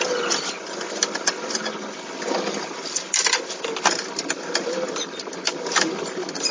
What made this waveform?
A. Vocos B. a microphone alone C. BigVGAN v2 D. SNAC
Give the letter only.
B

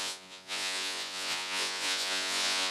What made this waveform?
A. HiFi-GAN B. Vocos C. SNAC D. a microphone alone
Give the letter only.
B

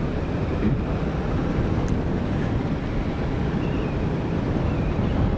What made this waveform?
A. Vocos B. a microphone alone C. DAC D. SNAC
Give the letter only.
B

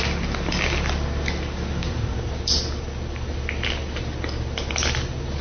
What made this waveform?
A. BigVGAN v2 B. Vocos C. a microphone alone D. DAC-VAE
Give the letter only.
C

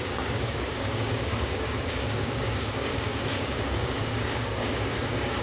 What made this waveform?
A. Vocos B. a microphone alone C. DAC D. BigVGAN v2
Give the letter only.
C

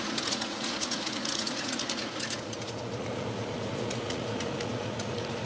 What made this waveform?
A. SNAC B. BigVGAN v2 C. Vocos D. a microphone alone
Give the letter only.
C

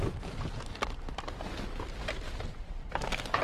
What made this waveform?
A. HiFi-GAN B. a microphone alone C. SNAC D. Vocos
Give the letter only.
B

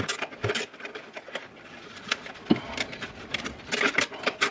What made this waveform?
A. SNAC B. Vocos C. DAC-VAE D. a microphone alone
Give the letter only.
D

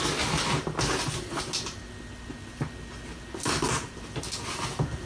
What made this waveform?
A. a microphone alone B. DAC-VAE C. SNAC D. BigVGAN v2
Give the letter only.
A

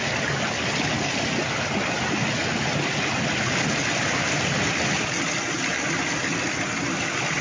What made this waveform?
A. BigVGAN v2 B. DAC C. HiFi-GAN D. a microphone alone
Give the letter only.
D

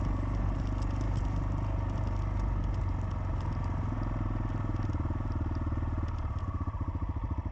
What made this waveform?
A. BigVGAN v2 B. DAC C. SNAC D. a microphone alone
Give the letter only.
D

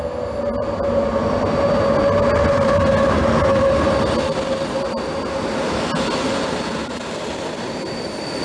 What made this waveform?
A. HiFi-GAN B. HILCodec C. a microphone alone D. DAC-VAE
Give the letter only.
C